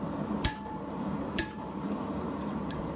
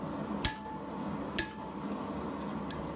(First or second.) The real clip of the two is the second